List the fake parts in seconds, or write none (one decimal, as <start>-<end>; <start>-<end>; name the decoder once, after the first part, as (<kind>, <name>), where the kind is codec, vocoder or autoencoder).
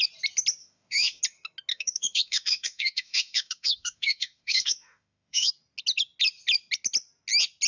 0.6-1.2 (autoencoder, DAC-VAE); 1.7-5.5